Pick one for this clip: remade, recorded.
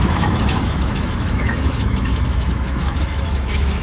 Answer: remade